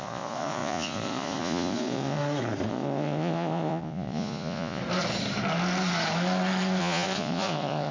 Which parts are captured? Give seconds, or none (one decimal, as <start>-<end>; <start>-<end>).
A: 2.2-2.7; 4.8-6.8